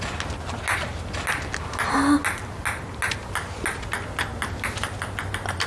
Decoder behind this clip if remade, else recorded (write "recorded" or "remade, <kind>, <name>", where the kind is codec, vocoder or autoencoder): recorded